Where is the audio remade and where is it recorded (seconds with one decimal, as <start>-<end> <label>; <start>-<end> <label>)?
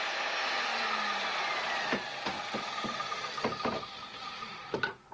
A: 0.0-4.2 recorded; 4.2-5.1 remade